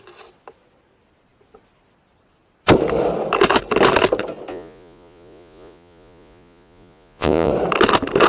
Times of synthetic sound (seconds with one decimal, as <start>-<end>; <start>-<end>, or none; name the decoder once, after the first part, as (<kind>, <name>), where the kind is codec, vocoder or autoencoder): 4.5-7.5 (vocoder, Vocos)